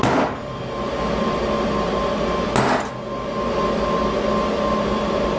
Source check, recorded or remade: recorded